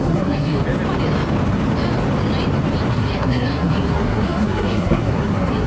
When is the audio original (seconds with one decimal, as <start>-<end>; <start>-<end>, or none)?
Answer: 0.6-2.9